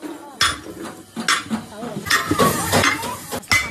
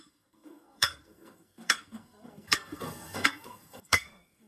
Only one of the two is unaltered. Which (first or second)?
first